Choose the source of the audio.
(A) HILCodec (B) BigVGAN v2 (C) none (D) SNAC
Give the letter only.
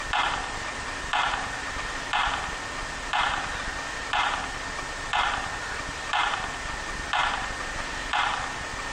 C